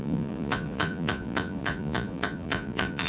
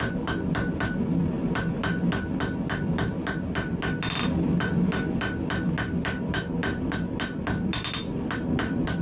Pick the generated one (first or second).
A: first